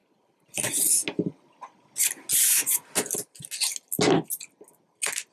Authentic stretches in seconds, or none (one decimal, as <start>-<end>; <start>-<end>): 0.8-5.3